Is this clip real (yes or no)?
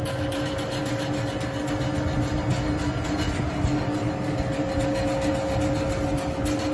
yes